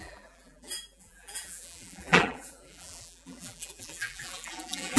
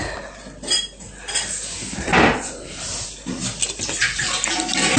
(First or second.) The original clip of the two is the second